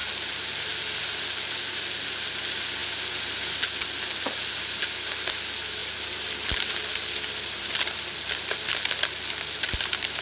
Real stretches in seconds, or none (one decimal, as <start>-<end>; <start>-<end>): 0.0-10.2